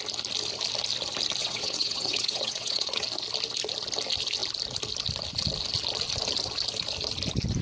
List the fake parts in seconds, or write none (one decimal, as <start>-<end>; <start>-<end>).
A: 1.4-3.0